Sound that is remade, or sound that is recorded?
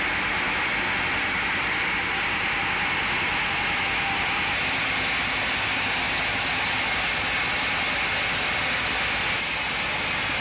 recorded